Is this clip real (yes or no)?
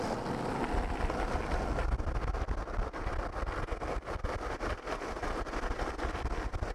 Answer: yes